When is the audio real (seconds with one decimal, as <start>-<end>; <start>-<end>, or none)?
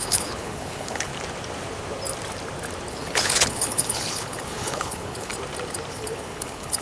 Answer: 1.1-2.9; 5.3-5.9